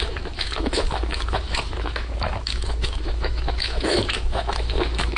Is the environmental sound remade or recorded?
remade